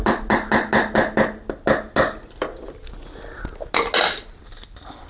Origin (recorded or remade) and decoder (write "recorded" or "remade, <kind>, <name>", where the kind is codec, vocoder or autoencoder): recorded